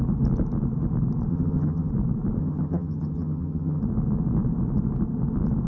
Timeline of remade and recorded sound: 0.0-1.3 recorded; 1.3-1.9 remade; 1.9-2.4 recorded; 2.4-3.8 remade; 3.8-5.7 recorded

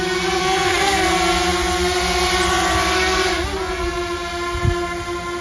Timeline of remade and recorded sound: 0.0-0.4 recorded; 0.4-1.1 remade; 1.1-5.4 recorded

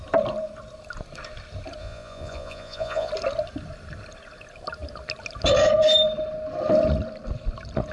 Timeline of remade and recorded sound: 0.0-1.8 recorded; 1.8-3.1 remade; 3.1-7.9 recorded